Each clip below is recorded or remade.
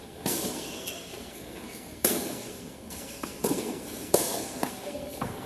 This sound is remade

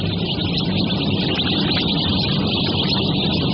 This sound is recorded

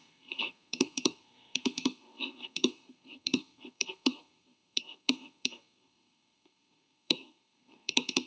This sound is remade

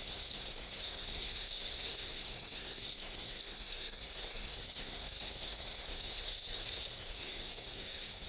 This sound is remade